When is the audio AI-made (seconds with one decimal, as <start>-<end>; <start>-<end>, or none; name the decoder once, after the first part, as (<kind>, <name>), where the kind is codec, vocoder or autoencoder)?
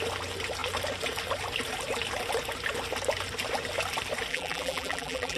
4.3-5.4 (vocoder, BigVGAN v2)